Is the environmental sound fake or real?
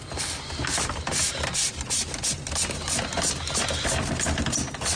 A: real